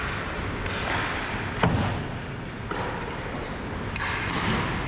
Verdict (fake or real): real